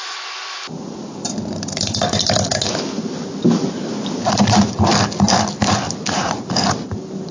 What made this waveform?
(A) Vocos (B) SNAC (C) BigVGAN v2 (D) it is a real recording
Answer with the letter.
D